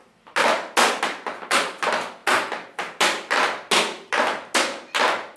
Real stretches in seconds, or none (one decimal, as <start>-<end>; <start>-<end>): 0.0-5.4